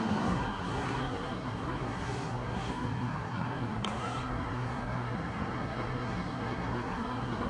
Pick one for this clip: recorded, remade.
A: remade